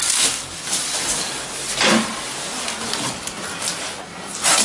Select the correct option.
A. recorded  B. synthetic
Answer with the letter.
A